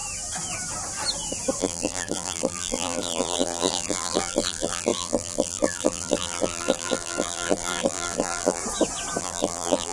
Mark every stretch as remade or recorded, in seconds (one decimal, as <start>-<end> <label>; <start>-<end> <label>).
0.0-1.6 recorded; 1.6-8.6 remade; 8.6-9.2 recorded; 9.2-9.9 remade